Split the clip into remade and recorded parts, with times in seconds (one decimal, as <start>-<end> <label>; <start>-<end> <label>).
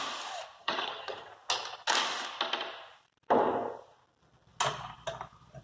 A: 0.0-0.6 recorded; 0.6-1.3 remade; 1.3-5.6 recorded